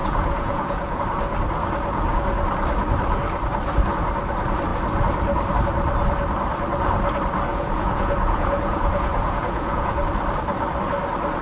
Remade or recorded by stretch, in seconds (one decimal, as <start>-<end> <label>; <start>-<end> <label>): 0.0-1.0 remade; 1.0-7.5 recorded; 7.5-10.0 remade; 10.0-11.4 recorded